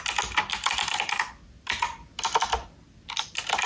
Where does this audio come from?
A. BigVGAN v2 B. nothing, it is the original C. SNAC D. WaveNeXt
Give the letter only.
B